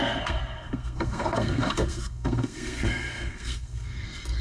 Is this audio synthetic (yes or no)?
yes